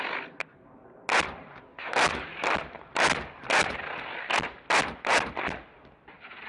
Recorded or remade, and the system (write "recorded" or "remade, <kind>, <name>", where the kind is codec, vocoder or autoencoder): recorded